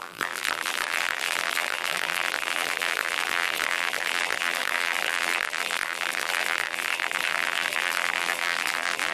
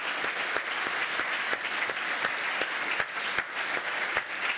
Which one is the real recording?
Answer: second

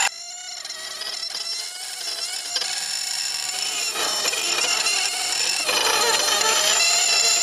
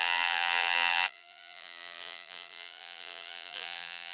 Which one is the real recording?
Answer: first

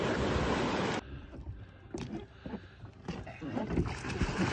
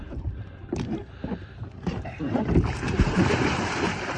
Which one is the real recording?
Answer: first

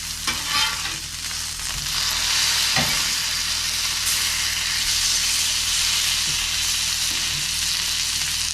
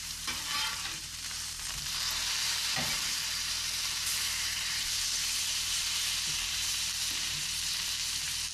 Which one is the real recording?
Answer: first